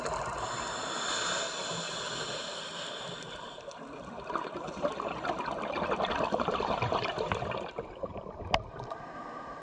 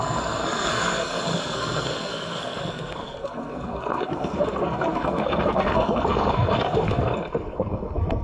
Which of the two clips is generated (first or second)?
second